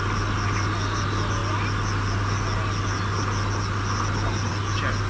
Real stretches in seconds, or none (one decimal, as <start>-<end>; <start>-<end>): 0.0-5.1